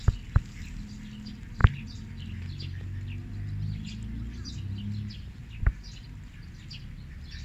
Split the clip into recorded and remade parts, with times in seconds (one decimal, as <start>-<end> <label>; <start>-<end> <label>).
0.0-7.4 recorded